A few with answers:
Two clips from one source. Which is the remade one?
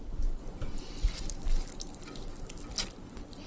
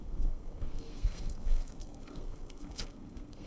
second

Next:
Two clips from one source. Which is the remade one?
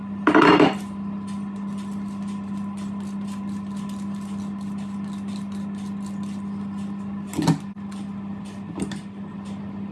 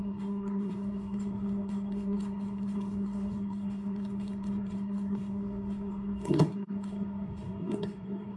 second